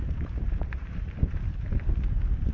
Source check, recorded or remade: remade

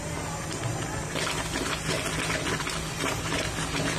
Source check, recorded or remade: recorded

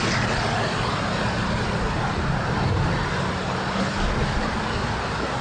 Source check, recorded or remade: recorded